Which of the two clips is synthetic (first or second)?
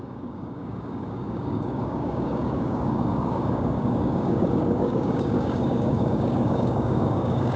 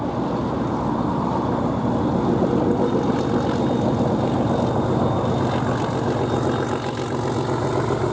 first